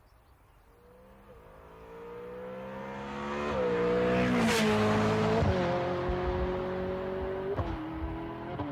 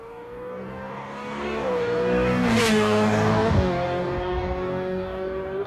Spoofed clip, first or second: second